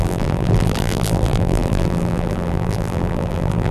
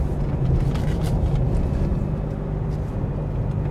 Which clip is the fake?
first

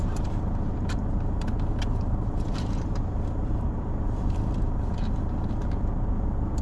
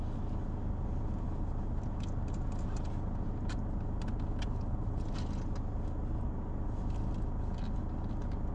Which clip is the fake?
first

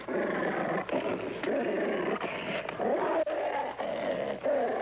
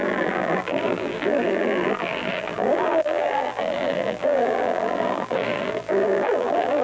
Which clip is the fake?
second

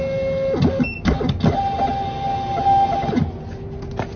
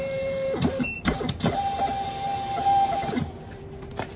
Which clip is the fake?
second